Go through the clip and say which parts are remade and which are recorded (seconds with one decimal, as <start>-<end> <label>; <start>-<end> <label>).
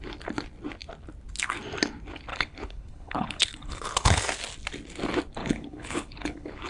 0.0-2.3 recorded; 2.3-4.2 remade; 4.2-5.4 recorded; 5.4-6.7 remade